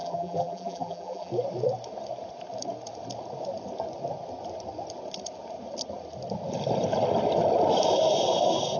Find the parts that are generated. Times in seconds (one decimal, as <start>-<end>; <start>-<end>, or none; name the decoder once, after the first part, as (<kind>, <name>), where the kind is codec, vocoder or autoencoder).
0.0-1.3 (vocoder, BigVGAN v2)